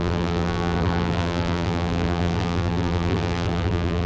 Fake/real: fake